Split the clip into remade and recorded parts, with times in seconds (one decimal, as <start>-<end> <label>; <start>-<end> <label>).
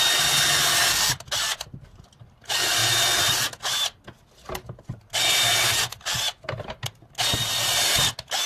0.0-8.5 recorded